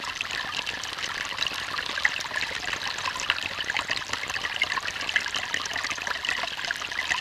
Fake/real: real